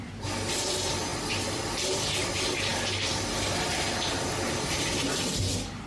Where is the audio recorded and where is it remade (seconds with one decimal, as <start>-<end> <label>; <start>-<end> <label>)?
0.0-5.9 recorded